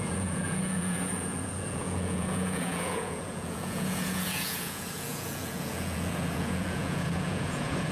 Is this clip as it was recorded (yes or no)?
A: no